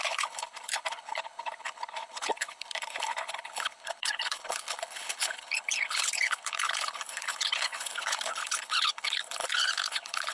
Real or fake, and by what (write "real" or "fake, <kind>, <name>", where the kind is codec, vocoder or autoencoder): fake, codec, HILCodec